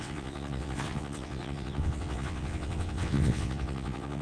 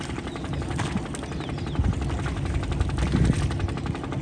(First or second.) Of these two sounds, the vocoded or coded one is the first